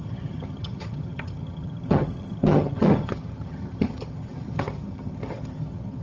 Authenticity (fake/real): fake